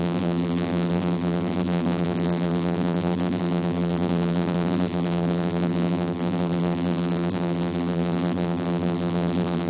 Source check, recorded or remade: remade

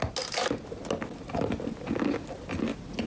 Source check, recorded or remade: recorded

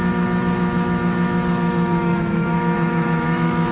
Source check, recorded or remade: remade